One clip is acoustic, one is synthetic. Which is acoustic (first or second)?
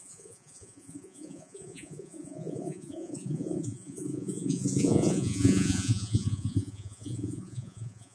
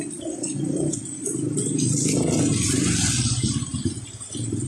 second